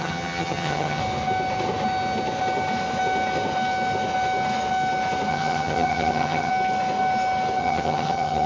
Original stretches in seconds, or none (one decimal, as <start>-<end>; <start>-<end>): 1.0-5.3; 6.5-7.6